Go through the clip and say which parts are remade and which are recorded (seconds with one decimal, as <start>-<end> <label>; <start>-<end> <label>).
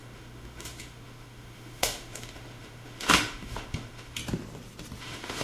0.0-4.2 remade; 4.2-5.0 recorded; 5.0-5.4 remade